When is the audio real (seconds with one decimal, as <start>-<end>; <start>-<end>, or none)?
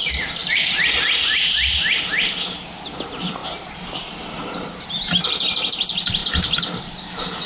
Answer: 0.0-0.4; 1.0-7.5